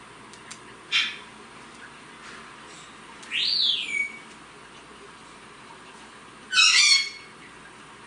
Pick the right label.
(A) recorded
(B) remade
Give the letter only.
A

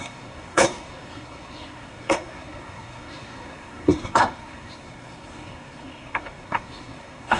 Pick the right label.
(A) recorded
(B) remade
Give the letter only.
B